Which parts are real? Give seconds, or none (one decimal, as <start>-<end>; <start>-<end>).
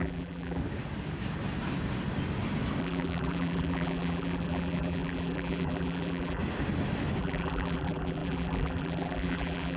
0.6-2.8; 6.4-7.2